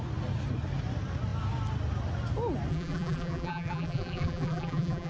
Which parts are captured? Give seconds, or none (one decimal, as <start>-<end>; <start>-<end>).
0.0-2.7